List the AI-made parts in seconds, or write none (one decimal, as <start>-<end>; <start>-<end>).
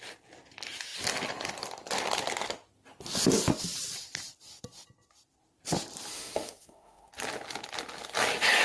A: 6.1-7.1